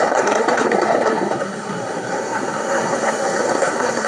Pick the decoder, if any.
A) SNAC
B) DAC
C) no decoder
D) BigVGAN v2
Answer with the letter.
A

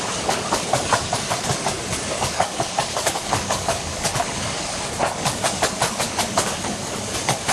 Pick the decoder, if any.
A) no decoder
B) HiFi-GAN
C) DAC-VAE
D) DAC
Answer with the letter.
D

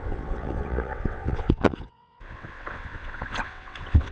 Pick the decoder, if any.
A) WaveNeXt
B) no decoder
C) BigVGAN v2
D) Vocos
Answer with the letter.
A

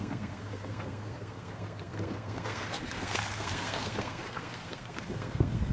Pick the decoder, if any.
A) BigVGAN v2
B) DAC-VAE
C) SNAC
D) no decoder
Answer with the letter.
C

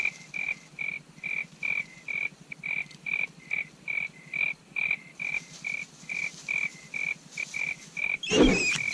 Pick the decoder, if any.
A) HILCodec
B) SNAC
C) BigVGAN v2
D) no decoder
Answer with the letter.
D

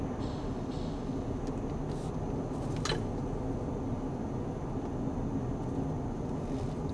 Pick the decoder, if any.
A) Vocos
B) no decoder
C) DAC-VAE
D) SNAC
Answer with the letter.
B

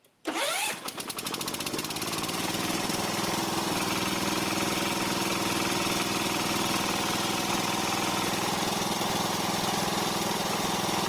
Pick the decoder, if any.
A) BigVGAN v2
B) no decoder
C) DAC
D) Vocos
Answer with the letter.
B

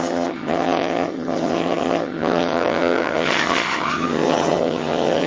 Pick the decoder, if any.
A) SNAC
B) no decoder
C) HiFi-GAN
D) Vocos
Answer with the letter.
C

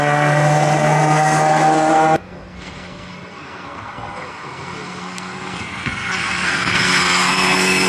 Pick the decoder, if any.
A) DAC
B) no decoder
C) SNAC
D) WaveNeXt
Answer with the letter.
C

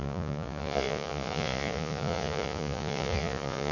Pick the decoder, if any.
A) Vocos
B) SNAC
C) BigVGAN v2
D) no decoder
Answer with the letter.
A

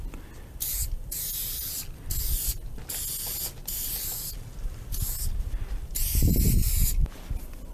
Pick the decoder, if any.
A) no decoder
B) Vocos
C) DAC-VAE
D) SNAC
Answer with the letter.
A